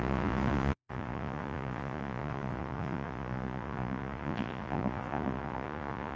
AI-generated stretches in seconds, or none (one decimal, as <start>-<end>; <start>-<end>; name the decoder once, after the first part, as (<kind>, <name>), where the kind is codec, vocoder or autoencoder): 0.0-6.2 (vocoder, Vocos)